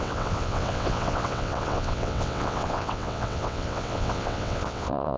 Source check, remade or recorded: remade